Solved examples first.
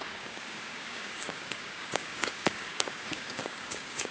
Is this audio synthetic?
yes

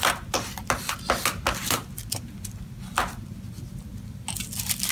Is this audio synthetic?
no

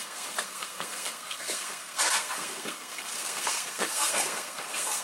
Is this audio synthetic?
yes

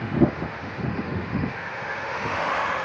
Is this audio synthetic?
yes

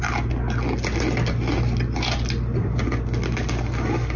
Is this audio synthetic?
no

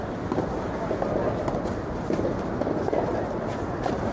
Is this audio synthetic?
no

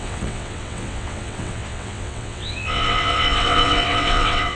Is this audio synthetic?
yes